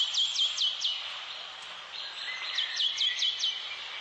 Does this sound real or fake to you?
real